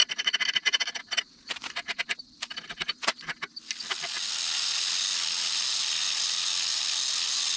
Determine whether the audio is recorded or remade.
recorded